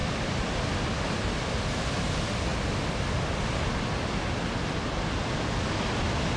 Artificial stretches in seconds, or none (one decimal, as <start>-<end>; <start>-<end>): none

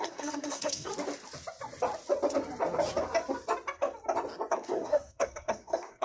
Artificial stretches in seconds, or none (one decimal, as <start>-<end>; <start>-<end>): 0.0-0.9; 4.5-6.0

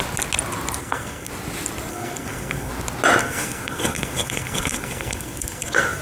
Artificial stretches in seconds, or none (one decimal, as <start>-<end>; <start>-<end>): 0.8-1.3; 1.9-2.7; 3.2-6.0

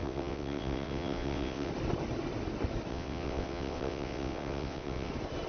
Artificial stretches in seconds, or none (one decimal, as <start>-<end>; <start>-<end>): 0.0-1.7; 2.9-5.1

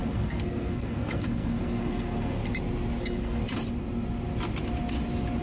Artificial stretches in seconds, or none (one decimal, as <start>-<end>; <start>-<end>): 0.0-2.4; 3.0-3.4